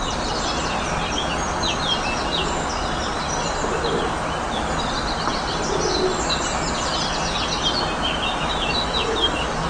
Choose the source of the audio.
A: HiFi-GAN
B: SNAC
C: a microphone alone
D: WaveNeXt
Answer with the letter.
C